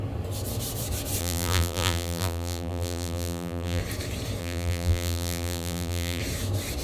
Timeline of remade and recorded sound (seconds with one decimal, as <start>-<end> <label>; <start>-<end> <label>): 0.0-1.2 recorded; 1.2-3.8 remade; 3.8-4.4 recorded; 4.4-6.2 remade; 6.2-6.8 recorded